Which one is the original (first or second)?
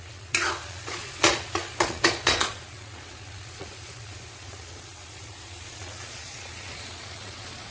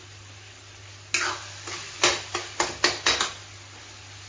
second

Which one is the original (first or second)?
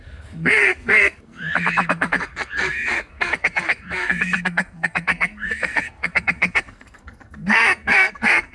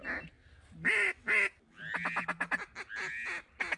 second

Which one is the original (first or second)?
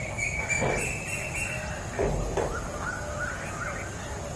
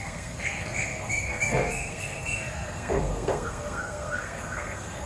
first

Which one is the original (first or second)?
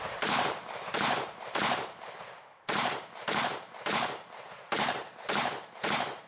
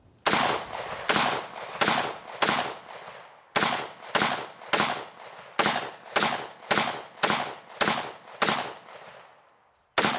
second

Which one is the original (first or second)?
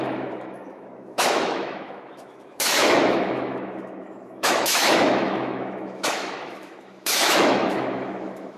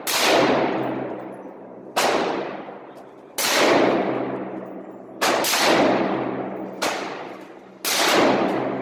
second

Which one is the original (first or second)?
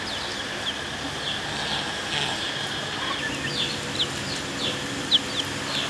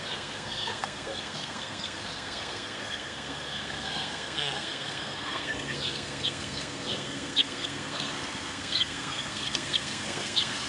first